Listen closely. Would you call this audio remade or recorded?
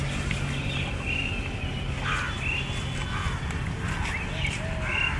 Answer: recorded